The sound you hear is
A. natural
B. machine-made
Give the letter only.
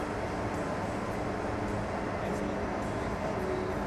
A